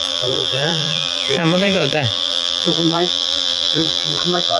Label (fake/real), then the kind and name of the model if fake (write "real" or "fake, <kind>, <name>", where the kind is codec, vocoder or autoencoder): fake, vocoder, BigVGAN v2